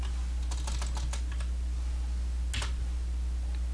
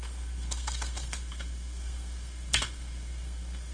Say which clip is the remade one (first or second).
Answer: second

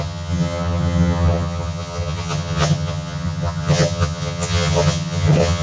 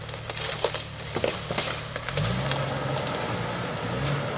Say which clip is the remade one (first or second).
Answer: first